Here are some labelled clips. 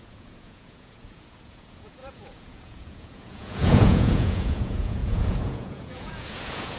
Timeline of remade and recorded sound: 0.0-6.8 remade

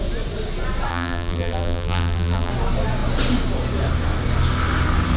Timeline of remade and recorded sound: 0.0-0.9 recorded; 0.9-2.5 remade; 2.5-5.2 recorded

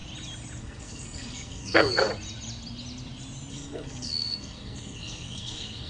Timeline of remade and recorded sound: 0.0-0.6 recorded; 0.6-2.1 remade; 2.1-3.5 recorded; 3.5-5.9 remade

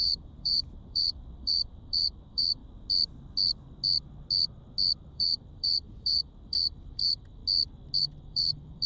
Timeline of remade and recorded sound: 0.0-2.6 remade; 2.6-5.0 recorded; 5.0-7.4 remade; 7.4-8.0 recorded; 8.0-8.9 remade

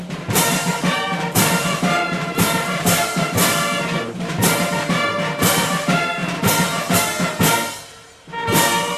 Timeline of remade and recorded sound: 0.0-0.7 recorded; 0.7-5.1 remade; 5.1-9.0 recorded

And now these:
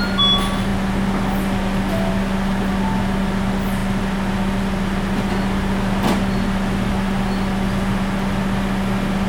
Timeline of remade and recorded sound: 0.0-9.3 recorded

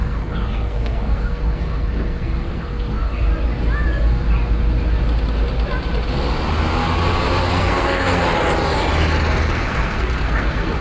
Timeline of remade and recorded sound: 0.0-3.3 remade; 3.3-7.5 recorded; 7.5-8.2 remade; 8.2-9.4 recorded; 9.4-10.8 remade

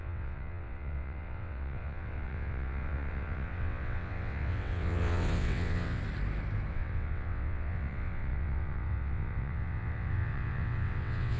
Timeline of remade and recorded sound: 0.0-6.0 remade; 6.0-6.7 recorded; 6.7-11.4 remade